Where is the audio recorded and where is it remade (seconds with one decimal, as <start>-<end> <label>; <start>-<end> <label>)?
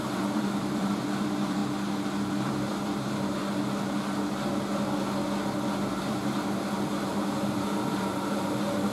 0.0-1.6 remade; 1.6-2.3 recorded; 2.3-3.4 remade; 3.4-6.0 recorded; 6.0-8.9 remade